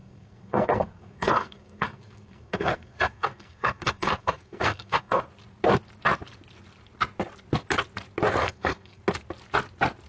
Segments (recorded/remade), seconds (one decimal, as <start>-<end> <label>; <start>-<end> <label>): 0.0-5.2 remade; 5.2-8.4 recorded; 8.4-9.0 remade; 9.0-10.1 recorded

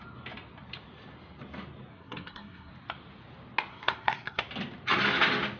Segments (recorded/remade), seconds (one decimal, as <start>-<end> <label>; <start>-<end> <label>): 0.0-1.9 recorded; 1.9-2.7 remade; 2.7-3.7 recorded; 3.7-4.4 remade; 4.4-5.6 recorded

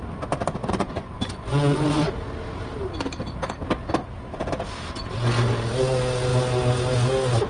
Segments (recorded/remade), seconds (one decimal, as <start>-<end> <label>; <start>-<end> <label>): 0.0-0.6 recorded; 0.6-2.1 remade; 2.1-7.5 recorded

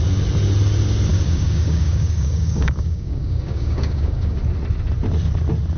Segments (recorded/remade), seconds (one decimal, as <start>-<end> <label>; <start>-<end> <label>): 0.0-1.1 recorded; 1.1-4.4 remade; 4.4-5.8 recorded

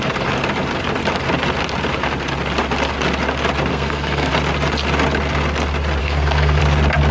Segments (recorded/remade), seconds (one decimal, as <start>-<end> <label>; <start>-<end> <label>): 0.0-3.7 recorded; 3.7-4.3 remade; 4.3-6.0 recorded; 6.0-6.6 remade; 6.6-7.1 recorded

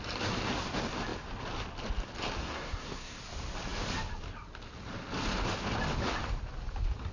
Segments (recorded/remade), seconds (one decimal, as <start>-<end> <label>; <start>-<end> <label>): 0.0-2.4 recorded; 2.4-3.2 remade; 3.2-7.1 recorded

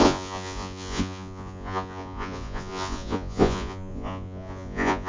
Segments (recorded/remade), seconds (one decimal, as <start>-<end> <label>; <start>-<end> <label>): 0.0-5.1 remade

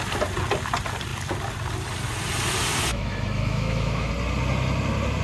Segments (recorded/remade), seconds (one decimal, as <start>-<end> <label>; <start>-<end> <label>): 0.0-2.9 recorded; 2.9-4.1 remade; 4.1-5.2 recorded